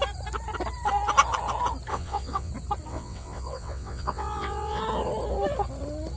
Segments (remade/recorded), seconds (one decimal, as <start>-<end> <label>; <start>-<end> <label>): 0.0-1.9 recorded; 1.9-2.5 remade; 2.5-2.9 recorded; 2.9-4.8 remade; 4.8-6.2 recorded